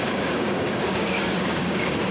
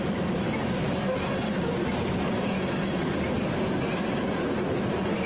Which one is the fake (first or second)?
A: first